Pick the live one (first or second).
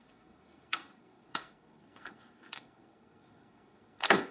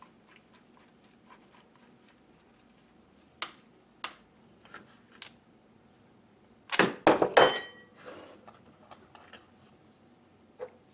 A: second